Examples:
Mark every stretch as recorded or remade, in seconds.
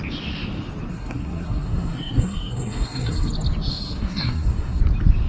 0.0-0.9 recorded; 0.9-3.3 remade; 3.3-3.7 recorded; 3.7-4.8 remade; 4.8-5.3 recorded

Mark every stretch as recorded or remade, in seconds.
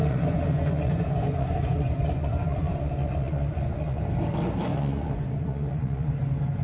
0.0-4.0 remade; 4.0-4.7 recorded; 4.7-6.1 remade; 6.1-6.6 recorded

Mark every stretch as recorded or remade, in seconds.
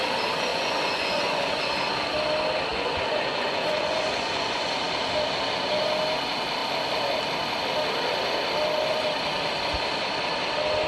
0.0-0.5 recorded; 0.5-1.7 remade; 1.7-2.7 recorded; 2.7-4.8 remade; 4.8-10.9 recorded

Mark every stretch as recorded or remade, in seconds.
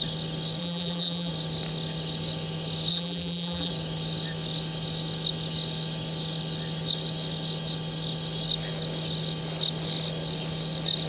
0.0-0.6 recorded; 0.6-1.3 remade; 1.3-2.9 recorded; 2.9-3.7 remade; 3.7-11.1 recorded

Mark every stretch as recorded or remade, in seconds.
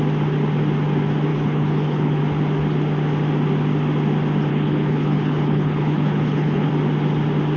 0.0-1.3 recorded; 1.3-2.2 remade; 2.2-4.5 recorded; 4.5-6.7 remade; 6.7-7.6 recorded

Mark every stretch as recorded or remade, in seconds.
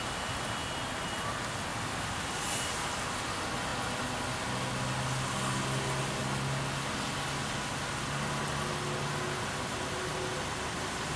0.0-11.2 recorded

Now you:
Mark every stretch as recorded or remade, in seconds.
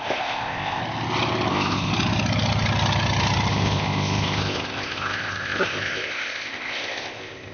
0.0-0.8 remade; 0.8-1.5 recorded; 1.5-1.9 remade; 1.9-3.5 recorded; 3.5-7.5 remade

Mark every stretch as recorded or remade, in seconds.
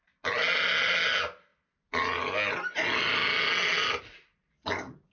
0.0-5.1 recorded